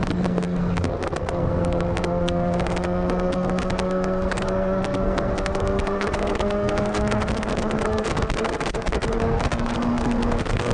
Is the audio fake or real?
fake